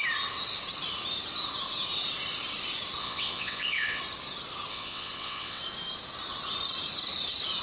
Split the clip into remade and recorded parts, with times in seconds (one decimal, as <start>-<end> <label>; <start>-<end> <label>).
0.0-3.0 recorded; 3.0-4.0 remade; 4.0-4.7 recorded; 4.7-5.6 remade; 5.6-7.6 recorded